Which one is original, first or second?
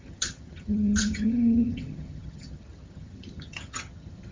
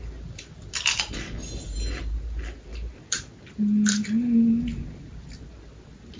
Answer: second